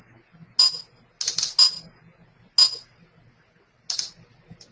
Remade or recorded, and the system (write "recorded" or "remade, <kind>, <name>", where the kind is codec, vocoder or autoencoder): recorded